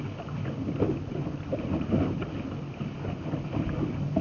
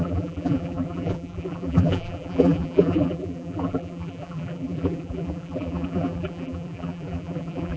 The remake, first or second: second